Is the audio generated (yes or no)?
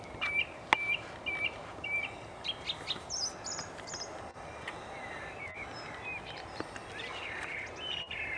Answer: no